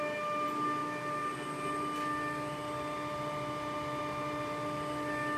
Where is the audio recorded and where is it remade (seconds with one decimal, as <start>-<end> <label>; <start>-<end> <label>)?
0.0-5.4 recorded